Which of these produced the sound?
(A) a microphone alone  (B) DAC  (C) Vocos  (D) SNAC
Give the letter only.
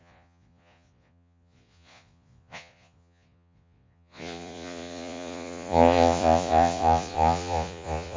C